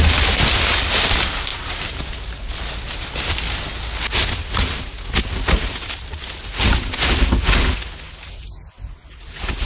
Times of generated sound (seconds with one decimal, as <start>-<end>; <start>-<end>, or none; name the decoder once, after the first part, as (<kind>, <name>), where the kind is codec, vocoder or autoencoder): 1.5-2.5 (vocoder, BigVGAN v2)